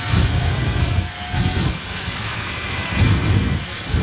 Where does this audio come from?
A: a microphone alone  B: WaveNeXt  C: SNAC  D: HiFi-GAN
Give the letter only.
C